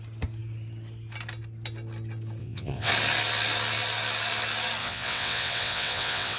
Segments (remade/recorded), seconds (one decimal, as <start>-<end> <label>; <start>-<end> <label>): 0.0-2.4 recorded; 2.4-2.9 remade; 2.9-4.8 recorded; 4.8-6.4 remade